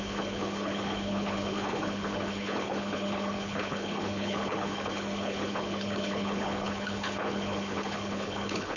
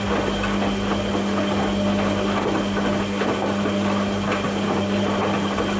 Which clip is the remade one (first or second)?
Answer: first